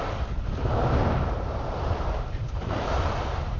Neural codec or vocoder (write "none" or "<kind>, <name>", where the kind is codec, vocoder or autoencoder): vocoder, BigVGAN v2